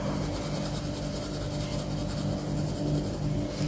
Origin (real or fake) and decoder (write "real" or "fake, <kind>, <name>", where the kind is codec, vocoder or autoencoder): real